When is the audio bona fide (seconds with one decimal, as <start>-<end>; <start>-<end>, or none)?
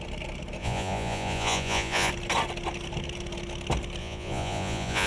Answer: 0.0-0.6; 2.1-4.0